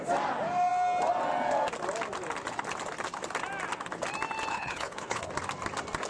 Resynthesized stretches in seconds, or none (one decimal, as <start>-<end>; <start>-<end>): 4.5-5.2